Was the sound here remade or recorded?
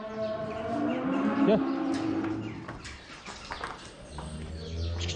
recorded